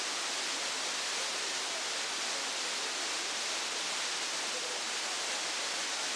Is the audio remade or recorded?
recorded